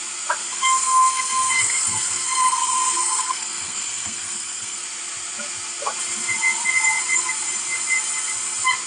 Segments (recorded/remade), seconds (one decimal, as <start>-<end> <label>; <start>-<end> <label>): 0.0-0.4 recorded; 0.4-4.8 remade; 4.8-8.9 recorded